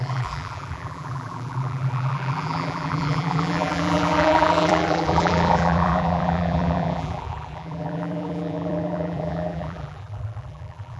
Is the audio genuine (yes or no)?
no